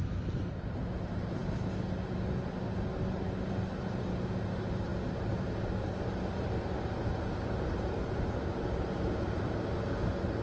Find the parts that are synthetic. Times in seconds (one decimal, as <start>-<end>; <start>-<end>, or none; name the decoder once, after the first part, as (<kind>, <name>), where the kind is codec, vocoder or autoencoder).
none